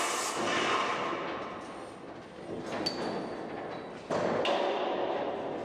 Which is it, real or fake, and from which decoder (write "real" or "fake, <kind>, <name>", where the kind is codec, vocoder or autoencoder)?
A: real